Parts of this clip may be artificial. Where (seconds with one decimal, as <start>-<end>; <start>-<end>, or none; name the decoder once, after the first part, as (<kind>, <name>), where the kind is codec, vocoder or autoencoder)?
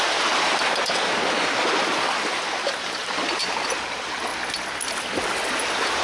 0.0-1.2 (vocoder, BigVGAN v2); 2.6-4.3; 5.5-6.0